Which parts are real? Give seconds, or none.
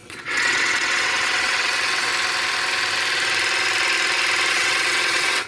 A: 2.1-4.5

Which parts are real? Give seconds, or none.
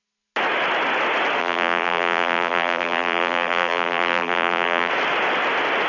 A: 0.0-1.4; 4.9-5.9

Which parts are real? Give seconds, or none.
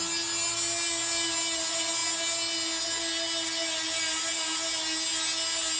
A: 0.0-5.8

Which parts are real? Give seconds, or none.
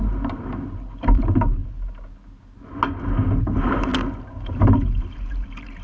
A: 1.6-3.4; 3.9-4.5